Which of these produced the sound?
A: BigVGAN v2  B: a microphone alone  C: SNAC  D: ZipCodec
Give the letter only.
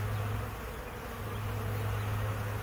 B